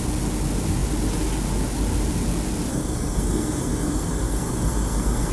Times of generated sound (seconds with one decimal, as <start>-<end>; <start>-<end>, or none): 2.7-5.3